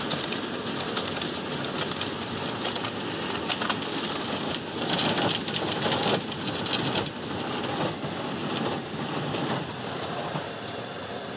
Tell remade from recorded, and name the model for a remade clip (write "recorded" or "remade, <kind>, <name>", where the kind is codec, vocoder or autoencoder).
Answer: recorded